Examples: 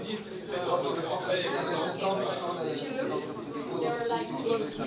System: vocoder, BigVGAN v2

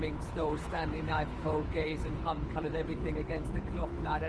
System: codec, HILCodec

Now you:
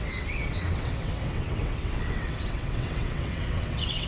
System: vocoder, WaveNeXt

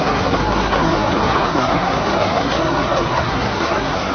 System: codec, SNAC